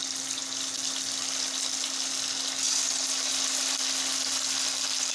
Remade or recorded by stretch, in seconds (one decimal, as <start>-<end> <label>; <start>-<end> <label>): 0.0-5.1 recorded